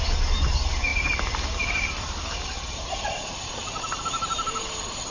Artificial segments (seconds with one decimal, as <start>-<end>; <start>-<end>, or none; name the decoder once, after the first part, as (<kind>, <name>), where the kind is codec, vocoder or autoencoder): none